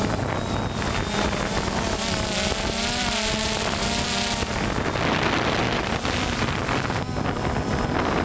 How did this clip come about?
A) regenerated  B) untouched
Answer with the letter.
B